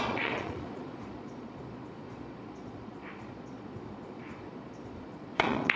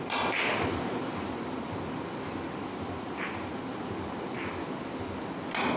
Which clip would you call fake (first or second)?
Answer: first